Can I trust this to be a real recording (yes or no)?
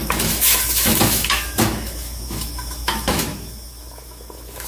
no